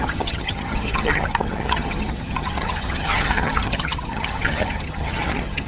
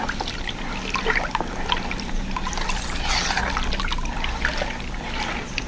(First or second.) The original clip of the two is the second